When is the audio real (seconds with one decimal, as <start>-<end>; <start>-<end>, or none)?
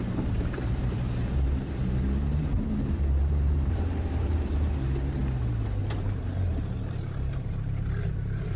5.2-5.8